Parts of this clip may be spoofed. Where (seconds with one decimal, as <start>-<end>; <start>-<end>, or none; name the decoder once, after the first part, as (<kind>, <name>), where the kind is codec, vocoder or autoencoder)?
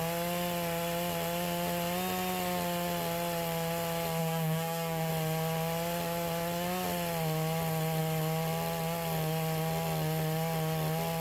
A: 4.2-5.1 (codec, DAC)